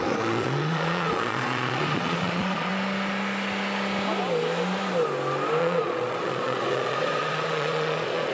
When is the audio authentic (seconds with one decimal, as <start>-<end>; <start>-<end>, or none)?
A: 2.7-5.6